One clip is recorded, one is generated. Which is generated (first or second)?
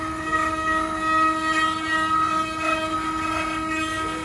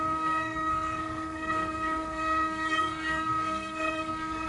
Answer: second